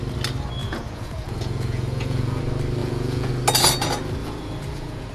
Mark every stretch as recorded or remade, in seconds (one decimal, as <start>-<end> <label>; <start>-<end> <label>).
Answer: 0.0-0.6 recorded; 0.6-2.4 remade; 2.4-2.8 recorded; 2.8-3.3 remade; 3.3-4.2 recorded; 4.2-5.1 remade